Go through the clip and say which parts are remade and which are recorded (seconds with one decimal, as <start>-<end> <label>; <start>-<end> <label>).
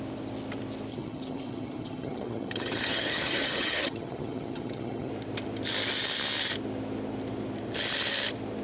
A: 0.0-0.9 recorded; 0.9-5.1 remade; 5.1-8.6 recorded